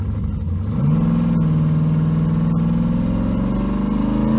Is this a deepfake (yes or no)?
no